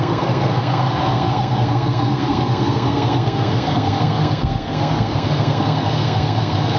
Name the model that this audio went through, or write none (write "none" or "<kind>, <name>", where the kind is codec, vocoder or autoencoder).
codec, SNAC